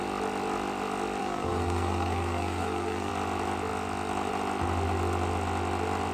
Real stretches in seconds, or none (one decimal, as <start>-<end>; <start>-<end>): 0.0-1.2; 3.1-6.1